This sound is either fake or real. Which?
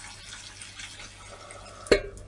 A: real